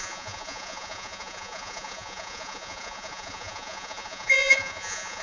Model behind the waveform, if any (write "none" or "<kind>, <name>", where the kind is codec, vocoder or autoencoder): vocoder, Vocos